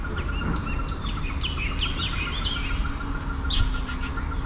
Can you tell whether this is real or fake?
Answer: real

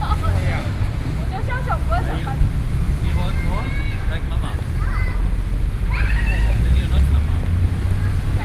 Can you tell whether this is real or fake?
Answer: real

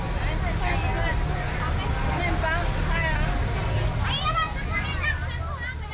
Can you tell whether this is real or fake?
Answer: real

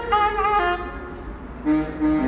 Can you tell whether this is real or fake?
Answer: real